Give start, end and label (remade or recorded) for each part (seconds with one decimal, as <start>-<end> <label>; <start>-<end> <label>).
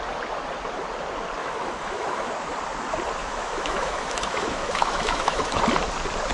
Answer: 0.0-1.4 recorded; 1.4-2.3 remade; 2.3-3.2 recorded; 3.2-5.6 remade; 5.6-6.3 recorded